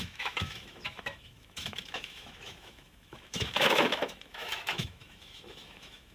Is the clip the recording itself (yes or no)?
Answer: no